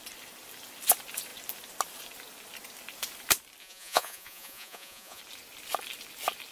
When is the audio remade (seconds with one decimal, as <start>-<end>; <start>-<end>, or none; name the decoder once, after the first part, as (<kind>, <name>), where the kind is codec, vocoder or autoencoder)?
3.6-5.2 (vocoder, Vocos)

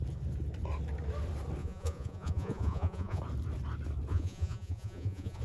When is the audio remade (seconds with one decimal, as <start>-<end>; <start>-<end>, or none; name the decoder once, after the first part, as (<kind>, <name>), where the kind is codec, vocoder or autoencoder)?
1.6-3.2 (vocoder, Vocos); 4.1-5.4

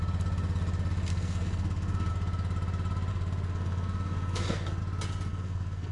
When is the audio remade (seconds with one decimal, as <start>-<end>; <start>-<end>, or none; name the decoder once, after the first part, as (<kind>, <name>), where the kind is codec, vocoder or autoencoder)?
1.1-2.1 (codec, SNAC); 3.1-4.8; 5.3-5.9

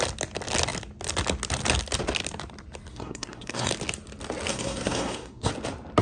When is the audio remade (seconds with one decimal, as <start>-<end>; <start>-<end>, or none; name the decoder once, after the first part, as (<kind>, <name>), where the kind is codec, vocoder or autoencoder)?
2.9-3.7 (codec, SNAC); 4.5-5.5

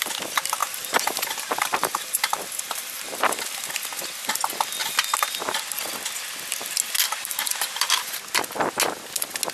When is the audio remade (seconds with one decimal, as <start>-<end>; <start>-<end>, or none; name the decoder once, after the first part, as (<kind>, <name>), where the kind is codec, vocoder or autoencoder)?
0.6-3.2 (vocoder, BigVGAN v2); 7.5-8.2

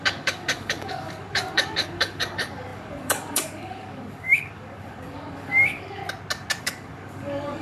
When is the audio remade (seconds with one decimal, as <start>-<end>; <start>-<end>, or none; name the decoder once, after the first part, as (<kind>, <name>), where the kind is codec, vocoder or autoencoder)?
0.0-6.0 (codec, DAC); 6.6-7.6

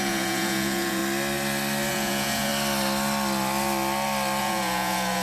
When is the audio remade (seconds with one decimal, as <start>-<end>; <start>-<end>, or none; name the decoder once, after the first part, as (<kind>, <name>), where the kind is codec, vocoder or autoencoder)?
0.0-1.0 (vocoder, Vocos); 1.9-2.5; 4.4-5.2

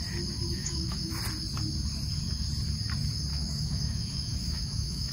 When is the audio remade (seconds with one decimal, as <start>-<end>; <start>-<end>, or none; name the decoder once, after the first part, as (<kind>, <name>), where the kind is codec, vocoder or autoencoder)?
0.6-1.2 (autoencoder, DAC-VAE); 3.3-5.1